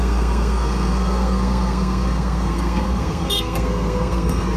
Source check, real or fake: fake